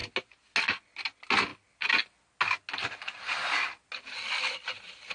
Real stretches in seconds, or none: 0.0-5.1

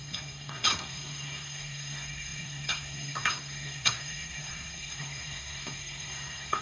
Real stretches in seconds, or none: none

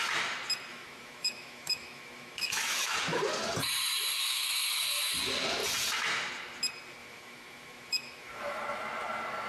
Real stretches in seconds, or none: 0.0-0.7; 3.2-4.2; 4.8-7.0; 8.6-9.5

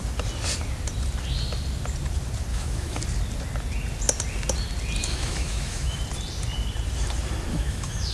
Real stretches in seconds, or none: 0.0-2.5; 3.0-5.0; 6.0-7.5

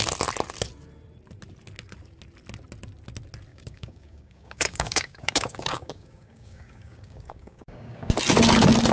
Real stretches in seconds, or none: 0.0-3.5; 8.1-8.9

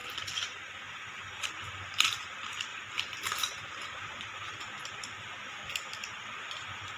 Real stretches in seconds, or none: 0.0-2.7

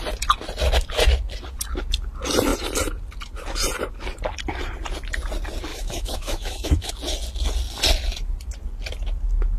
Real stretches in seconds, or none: 0.0-5.7; 6.9-9.6

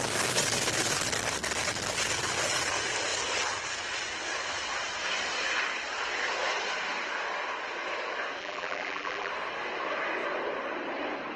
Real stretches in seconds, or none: 0.0-8.4; 9.3-11.4